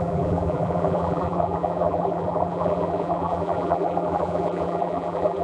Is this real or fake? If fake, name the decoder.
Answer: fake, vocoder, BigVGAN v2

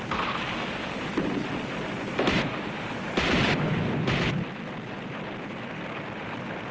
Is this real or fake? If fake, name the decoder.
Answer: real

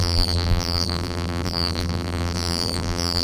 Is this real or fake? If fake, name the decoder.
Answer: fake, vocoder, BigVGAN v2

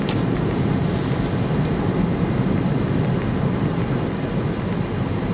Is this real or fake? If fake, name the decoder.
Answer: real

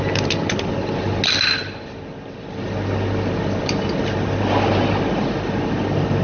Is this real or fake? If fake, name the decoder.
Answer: real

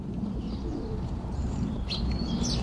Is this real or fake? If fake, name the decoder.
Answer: fake, vocoder, BigVGAN v2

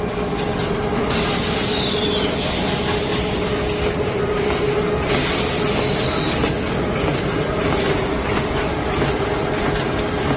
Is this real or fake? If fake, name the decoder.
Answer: real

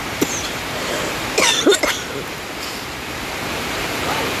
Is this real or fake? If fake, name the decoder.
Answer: fake, vocoder, BigVGAN v2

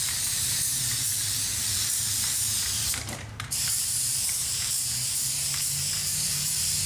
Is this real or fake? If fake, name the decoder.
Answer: fake, vocoder, BigVGAN v2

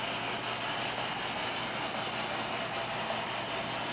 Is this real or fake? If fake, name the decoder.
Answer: real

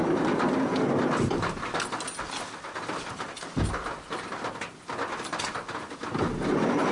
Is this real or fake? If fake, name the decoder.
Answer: real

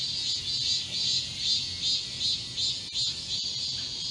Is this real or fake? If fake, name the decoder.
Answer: real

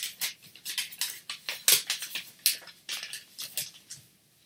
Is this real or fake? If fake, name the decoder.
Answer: real